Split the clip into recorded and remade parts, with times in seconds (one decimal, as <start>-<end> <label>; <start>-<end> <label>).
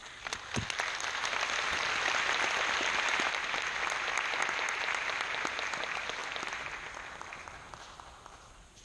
0.0-8.8 recorded